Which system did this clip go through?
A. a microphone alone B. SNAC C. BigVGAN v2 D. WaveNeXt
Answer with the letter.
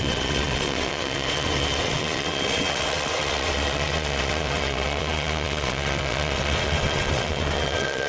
D